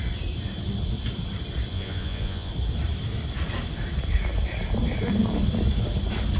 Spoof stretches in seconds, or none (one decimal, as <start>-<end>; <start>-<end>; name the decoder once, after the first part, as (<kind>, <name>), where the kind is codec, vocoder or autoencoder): 1.7-2.5 (vocoder, Vocos)